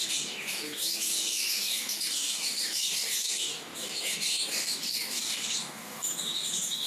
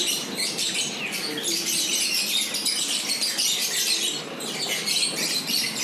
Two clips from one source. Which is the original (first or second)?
second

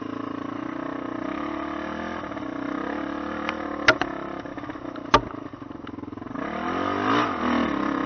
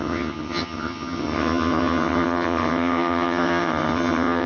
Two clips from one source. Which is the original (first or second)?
first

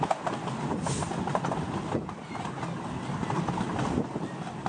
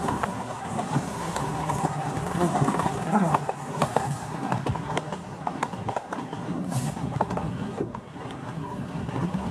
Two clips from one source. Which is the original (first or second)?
first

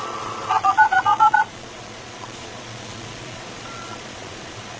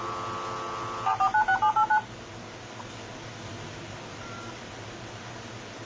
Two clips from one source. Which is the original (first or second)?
second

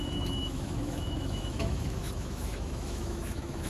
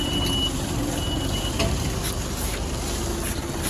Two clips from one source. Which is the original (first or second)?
second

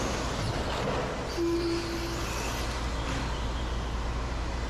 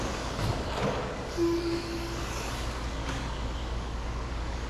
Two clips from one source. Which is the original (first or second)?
first